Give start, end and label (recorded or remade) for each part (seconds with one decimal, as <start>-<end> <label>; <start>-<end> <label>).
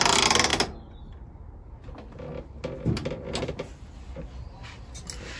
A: 0.0-5.4 recorded